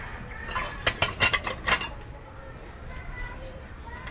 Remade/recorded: recorded